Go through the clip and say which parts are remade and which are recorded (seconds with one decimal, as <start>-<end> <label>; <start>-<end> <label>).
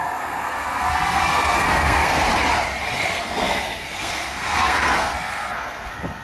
0.0-2.3 remade; 2.3-3.0 recorded; 3.0-6.2 remade